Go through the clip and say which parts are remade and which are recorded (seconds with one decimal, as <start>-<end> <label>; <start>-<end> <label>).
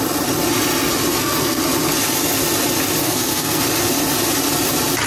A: 0.0-1.1 recorded; 1.1-1.6 remade; 1.6-3.0 recorded; 3.0-3.6 remade; 3.6-5.1 recorded